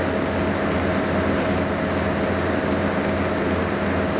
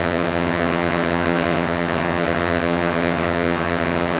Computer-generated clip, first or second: second